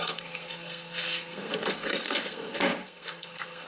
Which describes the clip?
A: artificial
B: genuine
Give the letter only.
A